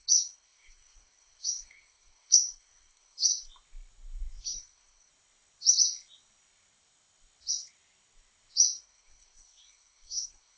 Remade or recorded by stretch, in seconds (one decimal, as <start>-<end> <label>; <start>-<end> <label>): 0.0-3.3 remade; 3.3-4.4 recorded; 4.4-5.1 remade; 5.1-8.8 recorded; 8.8-10.6 remade